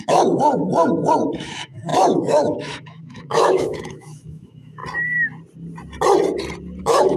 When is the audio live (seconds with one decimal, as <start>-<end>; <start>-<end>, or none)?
4.8-6.8